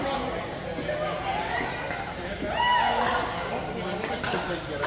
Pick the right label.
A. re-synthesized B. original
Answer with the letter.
B